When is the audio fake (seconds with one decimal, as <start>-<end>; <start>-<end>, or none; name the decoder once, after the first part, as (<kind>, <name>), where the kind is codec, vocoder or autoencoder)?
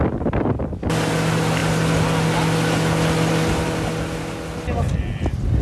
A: none